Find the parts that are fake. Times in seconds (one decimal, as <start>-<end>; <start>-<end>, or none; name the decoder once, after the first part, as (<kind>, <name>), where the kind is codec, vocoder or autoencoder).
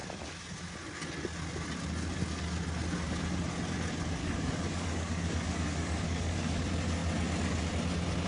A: 4.2-6.6 (codec, DAC)